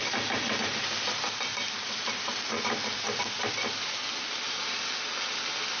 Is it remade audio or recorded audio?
recorded